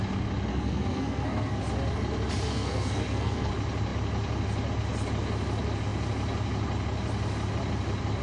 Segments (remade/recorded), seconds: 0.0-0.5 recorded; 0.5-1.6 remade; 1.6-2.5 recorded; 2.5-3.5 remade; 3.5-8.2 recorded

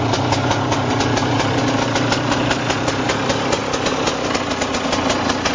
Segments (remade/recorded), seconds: 0.0-5.5 recorded

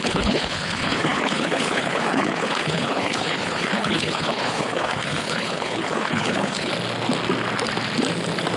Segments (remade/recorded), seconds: 0.0-6.7 remade; 6.7-8.6 recorded

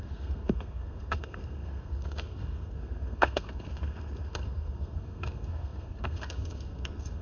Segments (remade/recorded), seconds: 0.0-7.2 remade

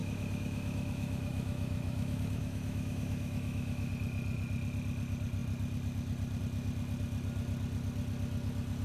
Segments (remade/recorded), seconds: 0.0-3.9 remade; 3.9-8.8 recorded